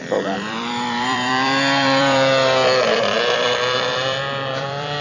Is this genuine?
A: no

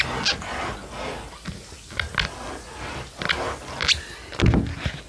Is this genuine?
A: yes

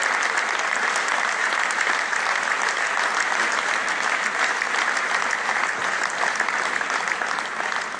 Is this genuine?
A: yes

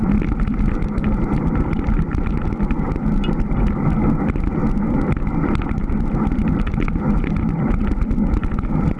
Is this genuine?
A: yes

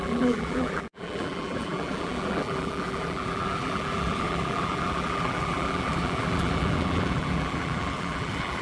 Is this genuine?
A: no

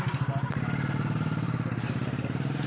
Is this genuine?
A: no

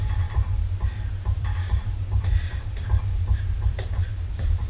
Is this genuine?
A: no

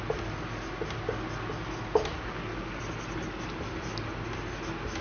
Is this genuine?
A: yes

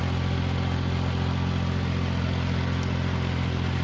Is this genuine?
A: yes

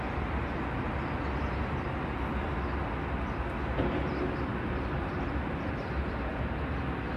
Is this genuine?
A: yes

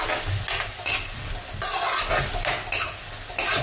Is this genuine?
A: yes